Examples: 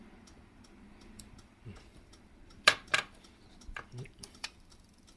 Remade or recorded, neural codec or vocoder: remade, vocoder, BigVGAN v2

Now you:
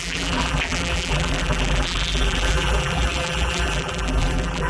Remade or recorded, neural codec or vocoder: remade, vocoder, BigVGAN v2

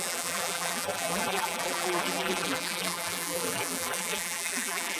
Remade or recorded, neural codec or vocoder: remade, vocoder, BigVGAN v2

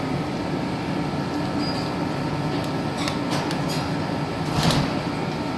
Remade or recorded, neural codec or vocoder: recorded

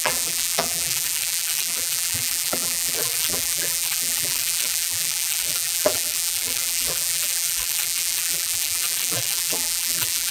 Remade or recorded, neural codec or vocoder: remade, vocoder, BigVGAN v2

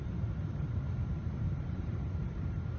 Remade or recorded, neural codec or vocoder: remade, vocoder, BigVGAN v2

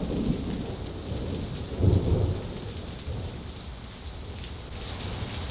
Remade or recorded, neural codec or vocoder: recorded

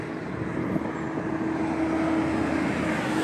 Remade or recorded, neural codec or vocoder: recorded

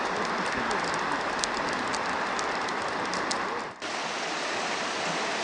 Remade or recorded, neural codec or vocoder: remade, vocoder, BigVGAN v2